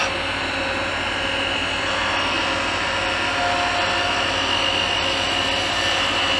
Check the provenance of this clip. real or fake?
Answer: real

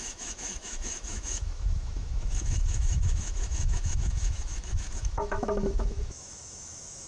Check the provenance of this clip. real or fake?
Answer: fake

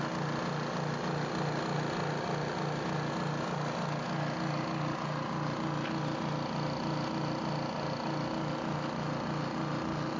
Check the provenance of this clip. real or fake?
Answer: real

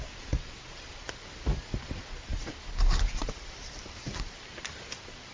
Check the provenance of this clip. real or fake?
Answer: real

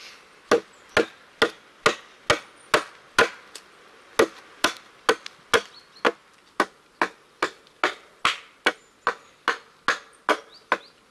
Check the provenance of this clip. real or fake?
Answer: real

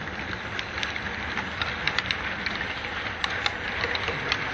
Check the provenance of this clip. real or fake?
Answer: real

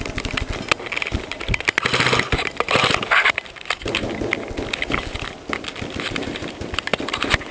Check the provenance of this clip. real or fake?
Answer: real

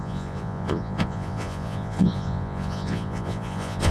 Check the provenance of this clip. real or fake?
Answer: fake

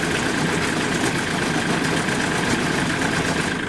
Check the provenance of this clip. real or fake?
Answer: real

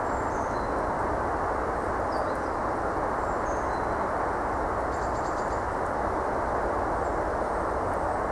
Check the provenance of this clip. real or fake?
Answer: real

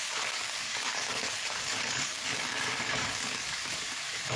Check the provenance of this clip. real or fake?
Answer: fake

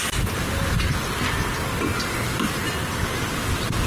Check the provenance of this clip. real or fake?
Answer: real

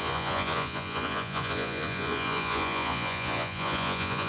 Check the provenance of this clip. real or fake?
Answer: fake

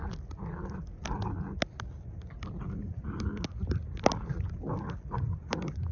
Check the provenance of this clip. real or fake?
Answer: real